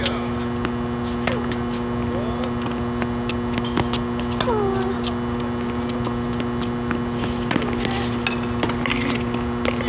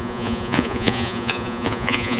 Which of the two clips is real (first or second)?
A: first